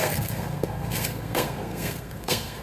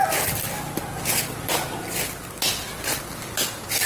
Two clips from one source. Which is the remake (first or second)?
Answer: first